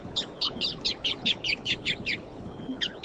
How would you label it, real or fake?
fake